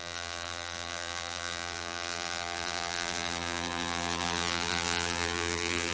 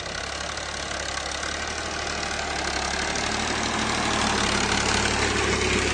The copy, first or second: first